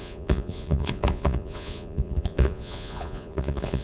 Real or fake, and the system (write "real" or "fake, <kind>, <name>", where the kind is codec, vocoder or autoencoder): fake, vocoder, Vocos